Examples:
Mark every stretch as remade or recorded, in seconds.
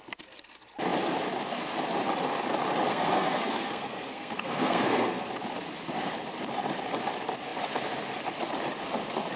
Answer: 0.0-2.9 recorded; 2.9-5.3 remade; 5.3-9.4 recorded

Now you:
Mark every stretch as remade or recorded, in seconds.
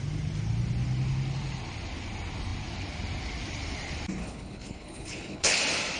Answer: 0.0-4.2 recorded; 4.2-5.6 remade; 5.6-6.0 recorded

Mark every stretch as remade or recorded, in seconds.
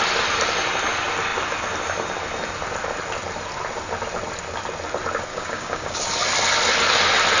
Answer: 0.0-5.3 recorded; 5.3-6.0 remade; 6.0-7.4 recorded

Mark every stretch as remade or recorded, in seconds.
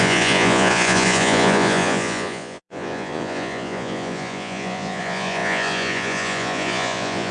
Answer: 0.0-7.3 remade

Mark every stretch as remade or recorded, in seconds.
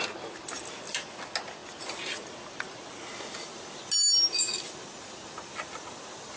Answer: 0.0-6.4 recorded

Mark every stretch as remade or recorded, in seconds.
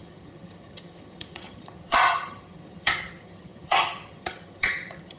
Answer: 0.0-5.2 remade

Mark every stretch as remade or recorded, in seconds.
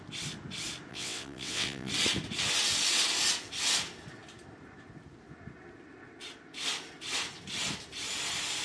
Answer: 0.0-0.9 recorded; 0.9-1.9 remade; 1.9-8.6 recorded